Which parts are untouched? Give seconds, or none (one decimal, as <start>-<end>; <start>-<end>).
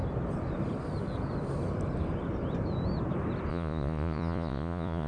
0.0-3.5